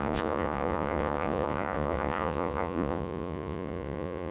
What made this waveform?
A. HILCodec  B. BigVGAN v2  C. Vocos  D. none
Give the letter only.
C